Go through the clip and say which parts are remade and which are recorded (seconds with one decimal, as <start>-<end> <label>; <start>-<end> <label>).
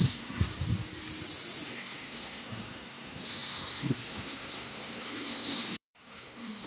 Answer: 0.0-0.5 remade; 0.5-1.7 recorded; 1.7-6.7 remade